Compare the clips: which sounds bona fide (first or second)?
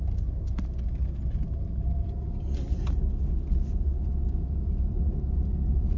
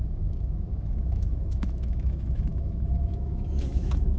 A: first